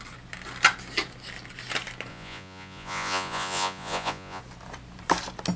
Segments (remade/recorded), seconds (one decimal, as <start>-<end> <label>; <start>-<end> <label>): 0.0-2.1 recorded; 2.1-4.4 remade; 4.4-5.6 recorded